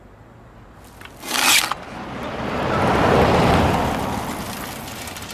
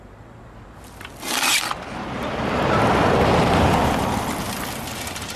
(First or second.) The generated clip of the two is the second